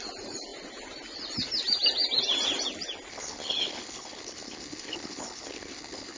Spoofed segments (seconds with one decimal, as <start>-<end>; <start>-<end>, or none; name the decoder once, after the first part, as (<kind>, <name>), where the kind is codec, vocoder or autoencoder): 3.1-6.2 (codec, HILCodec)